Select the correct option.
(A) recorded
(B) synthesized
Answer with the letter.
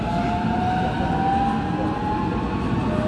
A